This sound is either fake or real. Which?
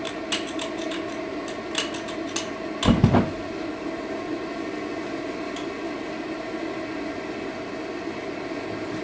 real